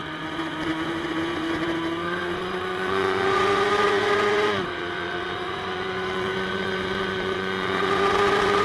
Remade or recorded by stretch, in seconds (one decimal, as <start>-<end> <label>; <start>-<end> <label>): 0.0-8.6 remade